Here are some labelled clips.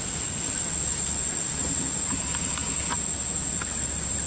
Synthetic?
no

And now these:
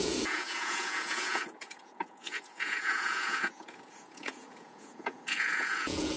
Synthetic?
yes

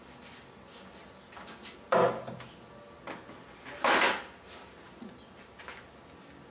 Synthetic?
no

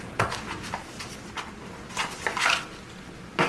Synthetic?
no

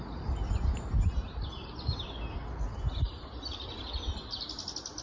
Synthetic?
no